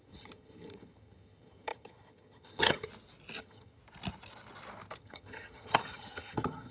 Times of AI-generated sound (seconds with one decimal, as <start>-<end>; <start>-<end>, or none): 0.0-2.9; 3.4-3.8; 5.0-6.7